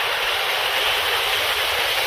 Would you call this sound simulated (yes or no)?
no